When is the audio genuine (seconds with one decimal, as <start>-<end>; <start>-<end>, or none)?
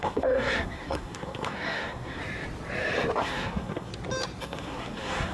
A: 2.2-3.2; 3.9-4.4